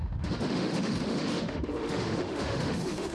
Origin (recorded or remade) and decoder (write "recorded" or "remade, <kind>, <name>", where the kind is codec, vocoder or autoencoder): remade, autoencoder, DAC-VAE